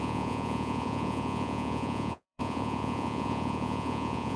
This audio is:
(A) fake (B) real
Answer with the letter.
A